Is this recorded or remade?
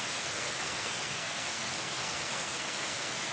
remade